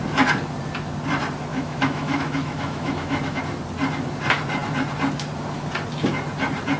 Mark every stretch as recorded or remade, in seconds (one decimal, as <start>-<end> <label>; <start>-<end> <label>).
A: 0.0-1.5 recorded; 1.5-3.4 remade; 3.4-6.8 recorded